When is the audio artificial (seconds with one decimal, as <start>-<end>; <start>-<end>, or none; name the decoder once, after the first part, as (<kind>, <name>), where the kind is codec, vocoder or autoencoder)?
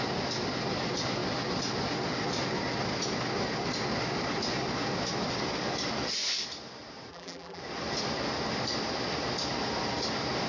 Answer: 7.1-7.6 (vocoder, BigVGAN v2)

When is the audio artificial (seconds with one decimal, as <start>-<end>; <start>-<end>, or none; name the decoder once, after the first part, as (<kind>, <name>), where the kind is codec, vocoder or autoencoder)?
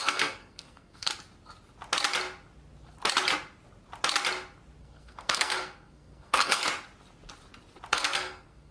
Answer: 0.0-1.1 (codec, SNAC); 4.8-6.6; 7.9-8.7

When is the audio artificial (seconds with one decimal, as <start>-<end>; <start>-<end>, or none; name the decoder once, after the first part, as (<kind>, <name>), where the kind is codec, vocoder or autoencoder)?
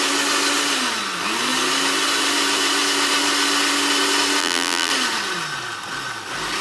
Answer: 4.4-4.9 (vocoder, BigVGAN v2)